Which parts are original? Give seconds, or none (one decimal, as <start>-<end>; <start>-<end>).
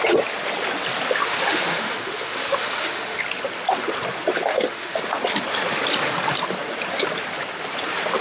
0.0-1.2; 3.2-4.5; 5.0-8.2